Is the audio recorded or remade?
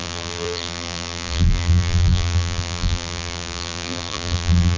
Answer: remade